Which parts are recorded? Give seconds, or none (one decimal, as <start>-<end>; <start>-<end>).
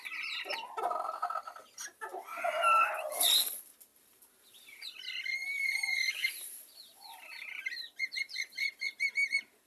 none